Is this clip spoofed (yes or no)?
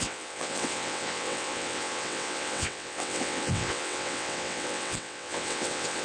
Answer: yes